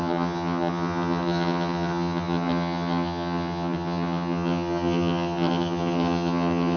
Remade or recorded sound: remade